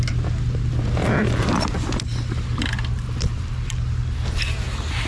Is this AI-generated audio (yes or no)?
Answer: no